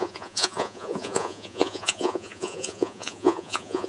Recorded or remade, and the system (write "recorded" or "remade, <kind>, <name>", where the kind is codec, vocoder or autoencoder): remade, vocoder, Vocos